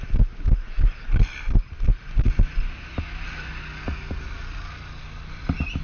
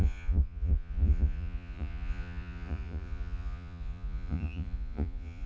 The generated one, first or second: second